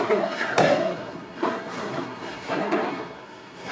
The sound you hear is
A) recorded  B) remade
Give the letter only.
B